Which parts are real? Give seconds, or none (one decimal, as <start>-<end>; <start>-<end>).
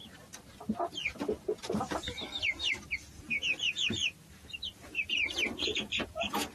0.0-3.2